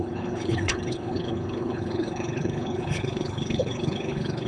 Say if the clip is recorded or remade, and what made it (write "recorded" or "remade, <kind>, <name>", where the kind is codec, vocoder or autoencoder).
remade, codec, HILCodec